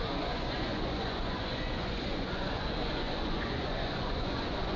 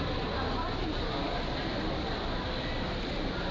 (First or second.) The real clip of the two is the second